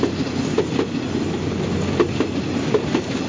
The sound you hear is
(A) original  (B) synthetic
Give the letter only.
A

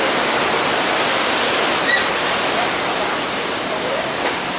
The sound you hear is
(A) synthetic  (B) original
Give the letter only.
B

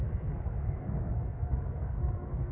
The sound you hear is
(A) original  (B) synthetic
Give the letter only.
B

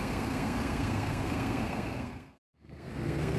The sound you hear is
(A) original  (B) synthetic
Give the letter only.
B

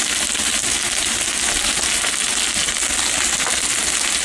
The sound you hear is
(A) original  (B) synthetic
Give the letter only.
A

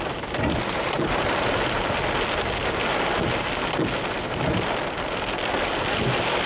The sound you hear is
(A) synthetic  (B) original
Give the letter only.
B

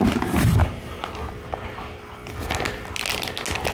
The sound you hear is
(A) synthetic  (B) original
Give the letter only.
B